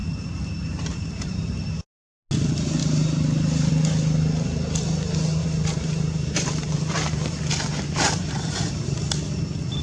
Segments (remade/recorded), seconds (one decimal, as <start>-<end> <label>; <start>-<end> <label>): 0.0-1.3 remade; 1.3-2.8 recorded; 2.8-3.7 remade; 3.7-5.4 recorded; 5.4-9.0 remade; 9.0-9.8 recorded

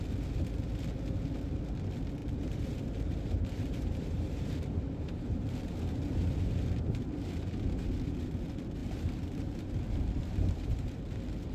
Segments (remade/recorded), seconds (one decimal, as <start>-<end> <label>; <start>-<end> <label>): 0.0-2.2 recorded; 2.2-5.4 remade; 5.4-8.8 recorded; 8.8-11.0 remade; 11.0-11.5 recorded

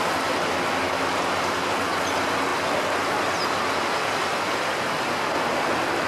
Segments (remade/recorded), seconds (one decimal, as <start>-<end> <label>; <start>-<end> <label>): 0.0-6.1 recorded